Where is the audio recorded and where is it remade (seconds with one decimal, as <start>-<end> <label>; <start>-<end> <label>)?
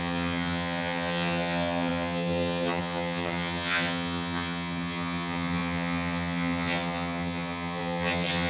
0.0-8.5 remade